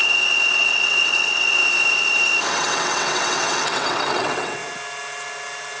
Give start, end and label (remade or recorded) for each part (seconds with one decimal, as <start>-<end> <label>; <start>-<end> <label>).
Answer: 0.0-0.6 recorded; 0.6-1.6 remade; 1.6-2.5 recorded; 2.5-4.6 remade; 4.6-5.8 recorded